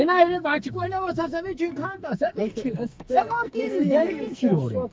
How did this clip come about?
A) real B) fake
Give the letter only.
B